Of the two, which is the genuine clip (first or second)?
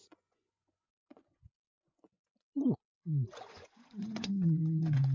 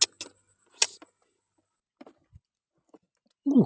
second